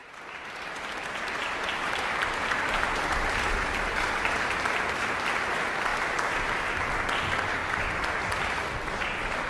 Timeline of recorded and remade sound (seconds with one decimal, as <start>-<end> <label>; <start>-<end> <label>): 0.0-4.4 remade; 4.4-9.5 recorded